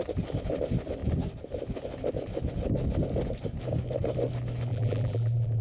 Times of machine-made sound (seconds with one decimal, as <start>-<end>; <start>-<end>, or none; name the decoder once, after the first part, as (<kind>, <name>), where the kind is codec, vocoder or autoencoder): 4.7-5.6 (vocoder, BigVGAN v2)